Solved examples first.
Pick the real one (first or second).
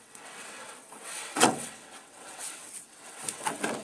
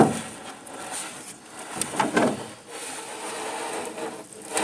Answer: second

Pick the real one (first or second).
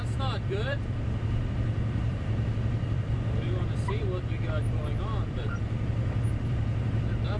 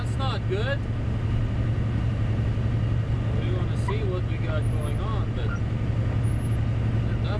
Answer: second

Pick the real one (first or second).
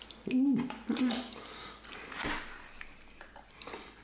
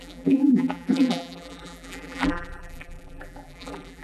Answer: first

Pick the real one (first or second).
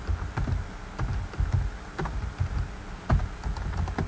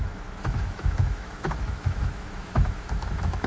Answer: first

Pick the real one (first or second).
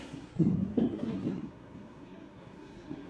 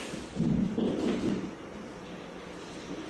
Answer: second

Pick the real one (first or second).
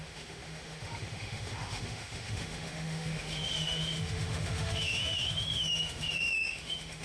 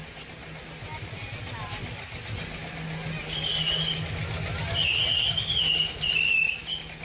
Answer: second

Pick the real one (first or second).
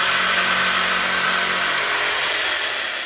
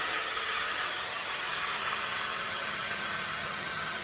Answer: first